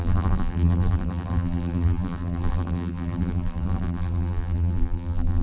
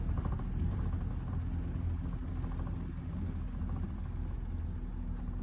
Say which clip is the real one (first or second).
second